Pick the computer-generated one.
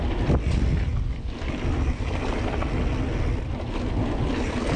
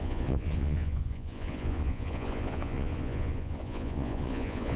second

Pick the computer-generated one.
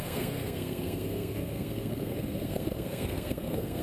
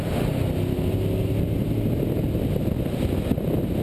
first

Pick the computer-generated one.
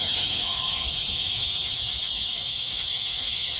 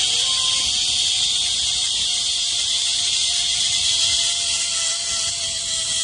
first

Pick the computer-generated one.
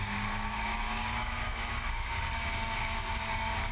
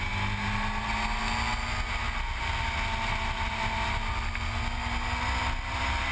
first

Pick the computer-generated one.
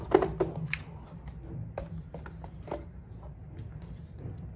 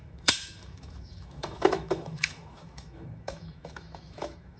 second